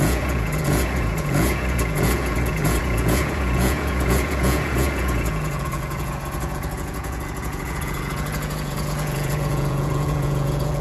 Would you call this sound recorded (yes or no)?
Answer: no